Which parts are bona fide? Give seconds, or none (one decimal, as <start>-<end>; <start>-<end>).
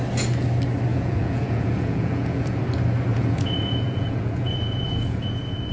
0.0-0.9; 2.6-3.1